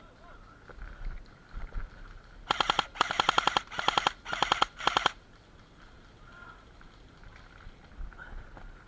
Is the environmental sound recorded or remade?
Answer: recorded